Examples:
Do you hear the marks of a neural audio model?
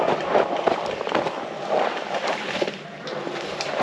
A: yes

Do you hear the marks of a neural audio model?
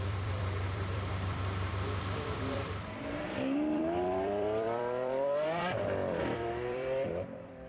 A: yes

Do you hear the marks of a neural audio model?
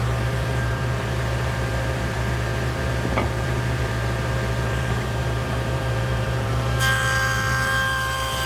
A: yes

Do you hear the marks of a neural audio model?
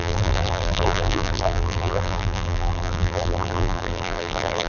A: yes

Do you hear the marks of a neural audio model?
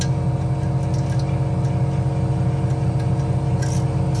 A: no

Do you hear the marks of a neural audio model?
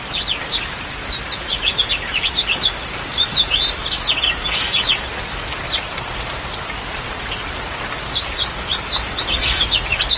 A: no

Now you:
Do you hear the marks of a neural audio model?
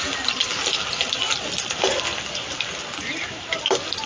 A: no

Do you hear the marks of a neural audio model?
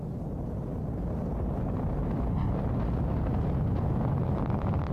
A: no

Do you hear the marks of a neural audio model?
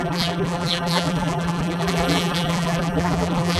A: yes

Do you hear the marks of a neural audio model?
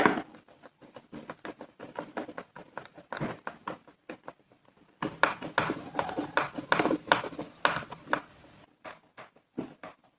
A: no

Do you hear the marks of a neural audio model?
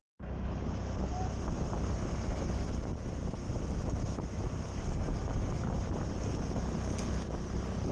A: no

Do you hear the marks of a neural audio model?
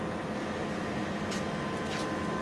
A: no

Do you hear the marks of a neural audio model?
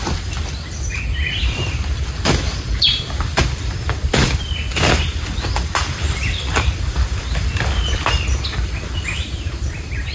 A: yes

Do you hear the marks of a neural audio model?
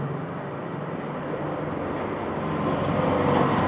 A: no